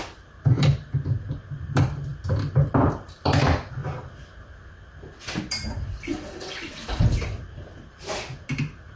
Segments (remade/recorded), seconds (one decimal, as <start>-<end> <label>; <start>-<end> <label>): 0.0-3.8 remade; 3.8-5.3 recorded; 5.3-9.0 remade